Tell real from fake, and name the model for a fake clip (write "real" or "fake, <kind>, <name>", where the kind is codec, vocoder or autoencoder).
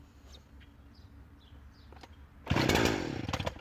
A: real